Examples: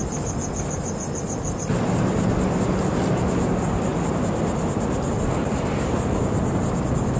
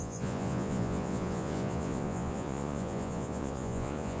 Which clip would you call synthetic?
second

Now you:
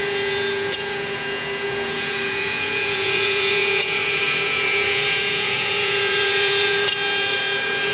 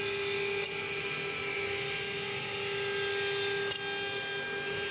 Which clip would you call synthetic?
first